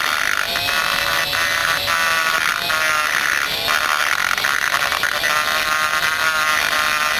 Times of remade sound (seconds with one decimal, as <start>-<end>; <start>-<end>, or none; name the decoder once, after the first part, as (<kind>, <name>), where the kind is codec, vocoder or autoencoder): none